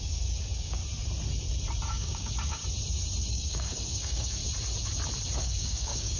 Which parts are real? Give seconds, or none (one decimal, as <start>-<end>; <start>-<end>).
0.8-1.9; 2.6-3.3; 4.4-5.4